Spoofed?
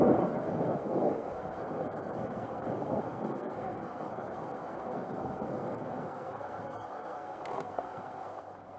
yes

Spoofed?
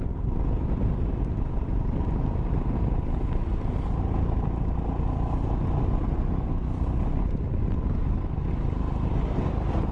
no